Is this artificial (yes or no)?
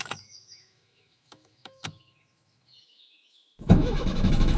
yes